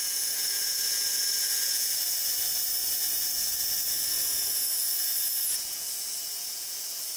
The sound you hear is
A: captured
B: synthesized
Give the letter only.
B